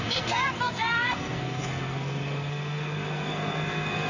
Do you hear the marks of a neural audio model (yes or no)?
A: yes